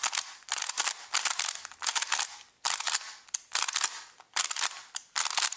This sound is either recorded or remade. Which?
recorded